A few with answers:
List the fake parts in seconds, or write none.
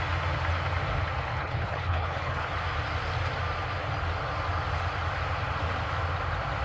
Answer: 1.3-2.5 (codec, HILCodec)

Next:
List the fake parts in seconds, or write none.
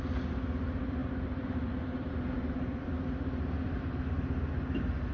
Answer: 1.0-4.1 (vocoder, BigVGAN v2)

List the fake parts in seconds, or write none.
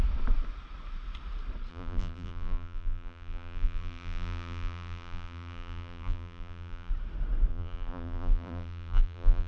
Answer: 1.7-6.9 (vocoder, BigVGAN v2); 7.5-9.5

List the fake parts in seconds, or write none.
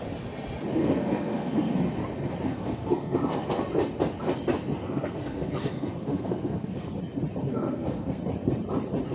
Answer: 0.8-1.8 (codec, SNAC); 2.5-3.6; 4.8-7.0; 7.4-8.2